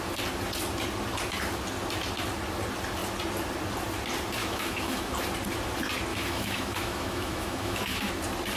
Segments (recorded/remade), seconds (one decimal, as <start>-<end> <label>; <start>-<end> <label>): 0.0-4.4 recorded; 4.4-5.1 remade; 5.1-6.1 recorded; 6.1-8.1 remade; 8.1-8.6 recorded